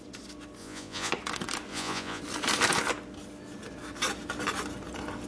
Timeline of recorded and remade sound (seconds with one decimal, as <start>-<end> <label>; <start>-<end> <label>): 0.0-0.6 recorded; 0.6-1.1 remade; 1.1-1.7 recorded; 1.7-2.2 remade; 2.2-5.3 recorded